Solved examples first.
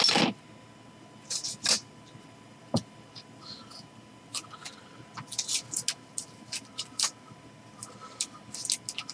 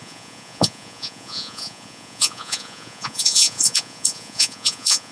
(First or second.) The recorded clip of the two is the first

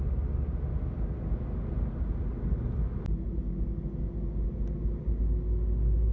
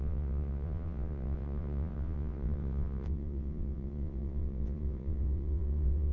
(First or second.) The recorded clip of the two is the first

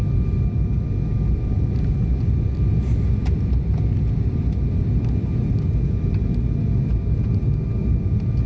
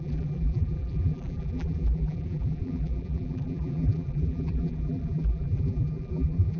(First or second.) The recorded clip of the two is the first